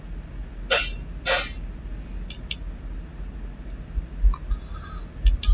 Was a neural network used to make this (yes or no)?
no